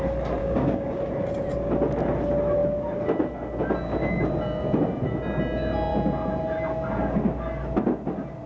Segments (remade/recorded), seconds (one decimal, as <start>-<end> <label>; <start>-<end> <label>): 0.0-0.4 recorded; 0.4-1.0 remade; 1.0-8.5 recorded